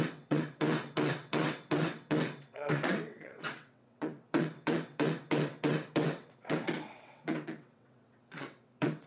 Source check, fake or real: fake